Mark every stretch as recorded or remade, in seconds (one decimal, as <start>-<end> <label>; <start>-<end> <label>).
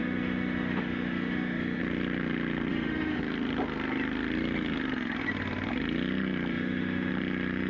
0.0-1.8 remade; 1.8-2.7 recorded; 2.7-3.2 remade; 3.2-6.5 recorded; 6.5-7.1 remade; 7.1-7.7 recorded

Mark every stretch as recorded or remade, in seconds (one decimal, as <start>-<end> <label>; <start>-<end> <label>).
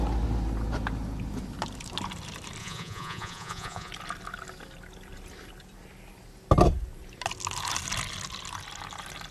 0.0-2.6 recorded; 2.6-3.9 remade; 3.9-9.3 recorded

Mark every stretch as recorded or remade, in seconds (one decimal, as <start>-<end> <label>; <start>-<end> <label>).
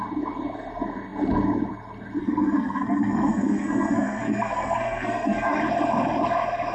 0.0-2.2 recorded; 2.2-5.6 remade; 5.6-6.7 recorded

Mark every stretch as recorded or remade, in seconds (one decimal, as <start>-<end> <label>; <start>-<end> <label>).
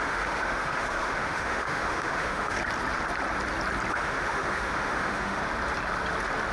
0.0-2.6 remade; 2.6-3.9 recorded; 3.9-5.4 remade; 5.4-6.5 recorded